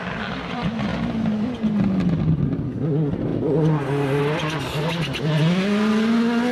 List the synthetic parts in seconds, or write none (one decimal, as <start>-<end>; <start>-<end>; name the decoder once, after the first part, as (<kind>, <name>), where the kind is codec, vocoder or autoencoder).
none